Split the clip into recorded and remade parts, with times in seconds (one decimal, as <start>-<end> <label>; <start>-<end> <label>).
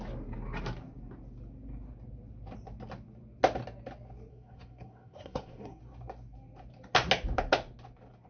0.0-4.3 recorded; 4.3-5.8 remade; 5.8-8.3 recorded